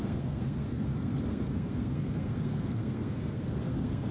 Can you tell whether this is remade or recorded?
remade